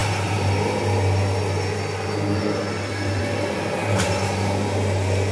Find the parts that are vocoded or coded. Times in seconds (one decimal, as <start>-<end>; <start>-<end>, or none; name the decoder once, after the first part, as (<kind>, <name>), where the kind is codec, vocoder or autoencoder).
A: none